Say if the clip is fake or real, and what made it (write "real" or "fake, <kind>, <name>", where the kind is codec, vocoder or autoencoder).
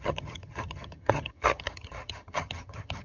fake, vocoder, HiFi-GAN